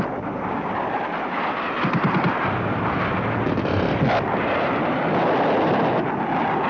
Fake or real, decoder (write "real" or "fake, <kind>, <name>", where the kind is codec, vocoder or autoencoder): real